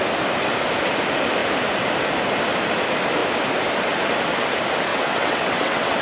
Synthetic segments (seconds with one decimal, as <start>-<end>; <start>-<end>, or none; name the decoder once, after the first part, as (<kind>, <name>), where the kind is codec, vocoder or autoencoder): 4.9-6.0 (vocoder, WaveNeXt)